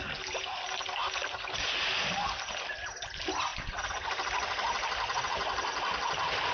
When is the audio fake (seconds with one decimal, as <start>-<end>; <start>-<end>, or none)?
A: none